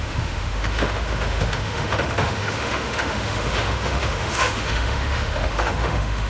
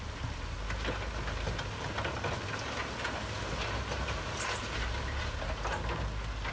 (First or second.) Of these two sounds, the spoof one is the first